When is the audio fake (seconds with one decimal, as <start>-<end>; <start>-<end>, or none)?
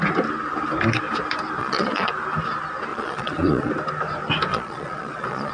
1.6-2.1; 2.9-3.7; 4.5-5.5